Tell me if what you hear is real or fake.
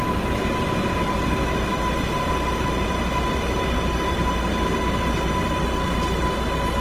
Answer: real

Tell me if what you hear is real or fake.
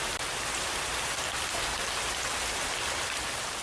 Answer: real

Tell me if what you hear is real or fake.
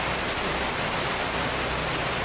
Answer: real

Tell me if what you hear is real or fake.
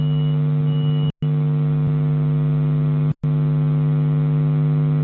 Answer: real